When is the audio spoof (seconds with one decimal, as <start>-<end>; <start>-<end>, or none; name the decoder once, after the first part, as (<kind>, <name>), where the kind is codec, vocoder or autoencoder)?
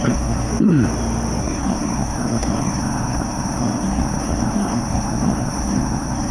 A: 0.0-0.5 (codec, SNAC); 1.4-6.3